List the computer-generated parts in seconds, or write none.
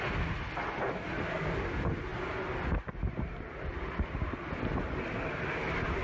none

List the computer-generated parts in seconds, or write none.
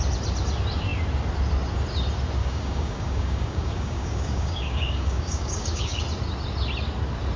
2.4-6.0 (codec, DAC)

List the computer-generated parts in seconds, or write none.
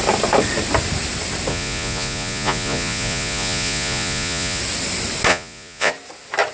1.5-4.6 (vocoder, Vocos); 5.3-5.9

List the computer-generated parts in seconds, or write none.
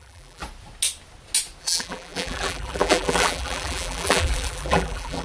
0.0-0.4 (vocoder, BigVGAN v2); 1.6-5.2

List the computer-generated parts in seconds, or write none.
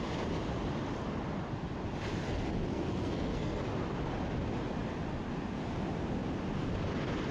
2.7-3.6 (codec, SNAC)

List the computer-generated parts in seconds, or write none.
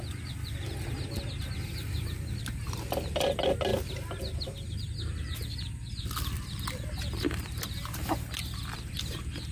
none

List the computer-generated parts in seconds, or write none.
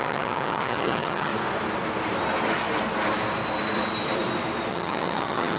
0.0-1.3 (vocoder, HiFi-GAN); 4.7-5.6